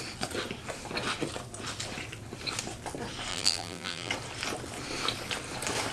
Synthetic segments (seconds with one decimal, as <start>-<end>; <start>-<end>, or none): 3.3-4.1